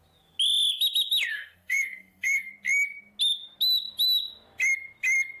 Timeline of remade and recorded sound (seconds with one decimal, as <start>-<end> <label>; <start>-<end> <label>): 0.0-1.3 recorded; 1.3-2.5 remade; 2.5-5.4 recorded